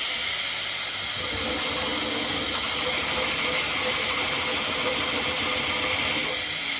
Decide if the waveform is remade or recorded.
recorded